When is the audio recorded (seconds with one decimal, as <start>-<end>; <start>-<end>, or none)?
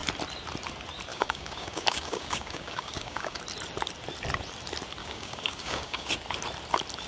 0.0-1.1; 3.4-5.0; 6.1-7.1